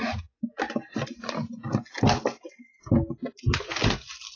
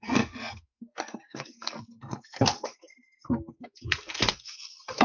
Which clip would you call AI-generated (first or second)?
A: second